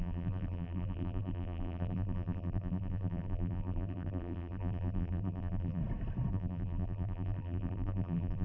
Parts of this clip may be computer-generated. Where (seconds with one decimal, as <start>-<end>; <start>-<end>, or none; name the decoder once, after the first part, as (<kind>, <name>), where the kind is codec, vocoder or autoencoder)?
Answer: 0.0-5.8 (vocoder, BigVGAN v2); 6.3-8.4